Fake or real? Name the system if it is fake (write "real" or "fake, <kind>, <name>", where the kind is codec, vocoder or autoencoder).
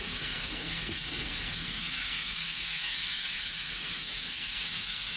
fake, codec, SNAC